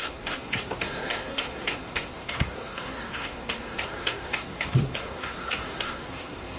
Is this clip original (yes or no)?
no